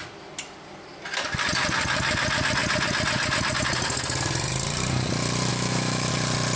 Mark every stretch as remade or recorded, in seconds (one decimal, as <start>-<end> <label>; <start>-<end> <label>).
0.0-5.5 recorded; 5.5-6.1 remade; 6.1-6.6 recorded